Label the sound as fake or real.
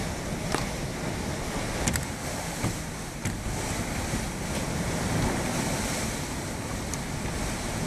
real